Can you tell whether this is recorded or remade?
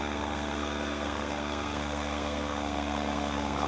remade